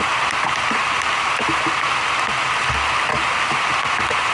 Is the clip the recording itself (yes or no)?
yes